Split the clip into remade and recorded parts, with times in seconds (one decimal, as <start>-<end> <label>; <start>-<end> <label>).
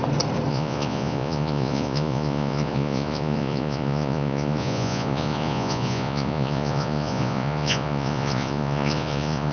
0.0-0.5 recorded; 0.5-9.5 remade